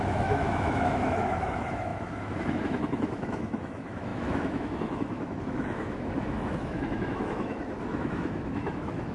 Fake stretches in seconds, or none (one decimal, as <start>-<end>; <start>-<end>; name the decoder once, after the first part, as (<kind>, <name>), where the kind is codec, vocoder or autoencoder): 0.0-9.1 (autoencoder, DAC-VAE)

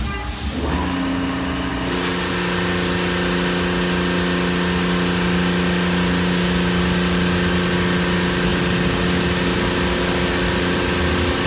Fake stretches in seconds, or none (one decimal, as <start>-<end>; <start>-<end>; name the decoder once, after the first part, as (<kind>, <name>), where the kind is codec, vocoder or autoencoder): none

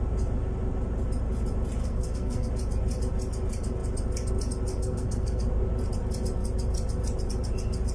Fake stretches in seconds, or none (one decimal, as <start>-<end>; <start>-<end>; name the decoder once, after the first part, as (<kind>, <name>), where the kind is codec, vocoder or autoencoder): 1.8-2.5 (codec, SNAC); 4.7-5.4

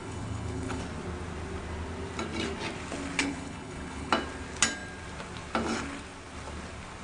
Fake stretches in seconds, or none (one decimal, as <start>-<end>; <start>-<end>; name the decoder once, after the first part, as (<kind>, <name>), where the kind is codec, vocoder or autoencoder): 0.0-0.8 (codec, HILCodec); 3.2-4.1

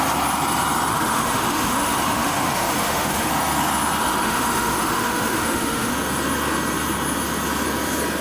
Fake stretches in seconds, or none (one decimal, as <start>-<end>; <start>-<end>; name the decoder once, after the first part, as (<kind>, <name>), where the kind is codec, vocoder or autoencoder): 0.9-3.3 (autoencoder, DAC-VAE); 4.0-5.9

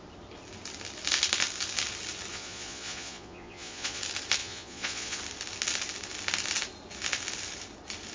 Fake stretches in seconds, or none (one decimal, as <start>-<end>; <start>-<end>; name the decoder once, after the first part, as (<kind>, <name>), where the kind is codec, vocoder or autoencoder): 2.3-4.0 (vocoder, Vocos); 4.4-5.2

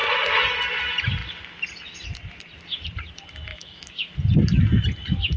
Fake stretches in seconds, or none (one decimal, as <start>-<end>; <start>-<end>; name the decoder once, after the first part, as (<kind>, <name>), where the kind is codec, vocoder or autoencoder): 3.5-4.1 (autoencoder, DAC-VAE)

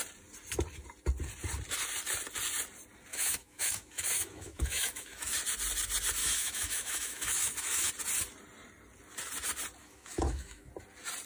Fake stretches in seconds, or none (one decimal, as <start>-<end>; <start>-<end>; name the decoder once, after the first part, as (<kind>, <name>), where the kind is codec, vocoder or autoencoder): 3.1-5.3 (autoencoder, DAC-VAE); 6.2-7.9; 9.8-10.7